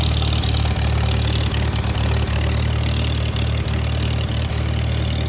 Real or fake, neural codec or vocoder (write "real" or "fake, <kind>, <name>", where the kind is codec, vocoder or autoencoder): real